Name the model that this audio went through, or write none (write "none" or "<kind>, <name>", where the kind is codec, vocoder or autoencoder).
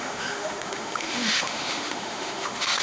autoencoder, DAC-VAE